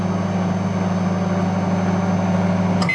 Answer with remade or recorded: recorded